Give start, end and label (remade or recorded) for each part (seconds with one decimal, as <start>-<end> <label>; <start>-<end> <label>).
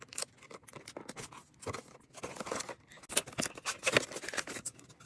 0.0-5.1 recorded